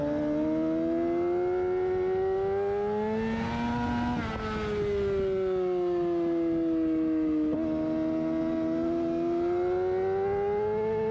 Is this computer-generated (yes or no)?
no